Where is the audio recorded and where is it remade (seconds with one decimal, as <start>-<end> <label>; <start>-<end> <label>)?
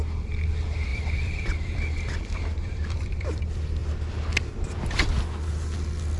0.0-0.9 recorded; 0.9-3.4 remade; 3.4-6.2 recorded